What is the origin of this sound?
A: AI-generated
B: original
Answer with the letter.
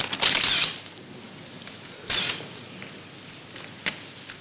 B